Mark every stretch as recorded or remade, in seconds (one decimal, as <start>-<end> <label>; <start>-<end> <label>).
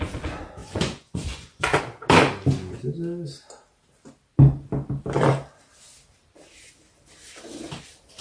0.0-0.6 recorded; 0.6-1.8 remade; 1.8-8.2 recorded